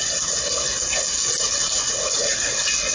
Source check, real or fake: real